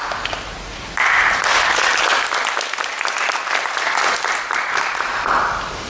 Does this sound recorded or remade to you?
recorded